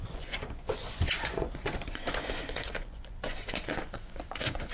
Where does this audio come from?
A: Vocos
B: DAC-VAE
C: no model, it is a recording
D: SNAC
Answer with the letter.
A